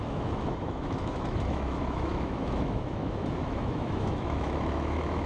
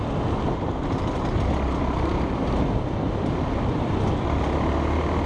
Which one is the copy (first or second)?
first